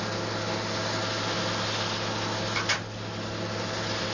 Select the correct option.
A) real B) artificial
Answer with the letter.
A